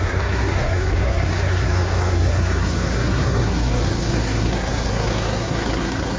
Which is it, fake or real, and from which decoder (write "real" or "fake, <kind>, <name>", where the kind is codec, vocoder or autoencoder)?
fake, codec, SNAC